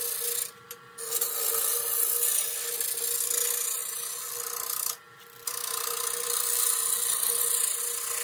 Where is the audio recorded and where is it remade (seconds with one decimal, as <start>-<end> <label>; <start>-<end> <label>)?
0.0-8.2 recorded